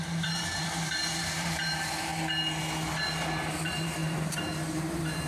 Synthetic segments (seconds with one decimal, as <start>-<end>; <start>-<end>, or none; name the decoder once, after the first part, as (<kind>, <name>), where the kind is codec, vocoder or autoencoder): 0.0-2.1 (vocoder, BigVGAN v2); 3.5-5.3